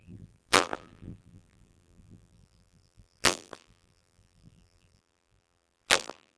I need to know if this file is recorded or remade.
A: remade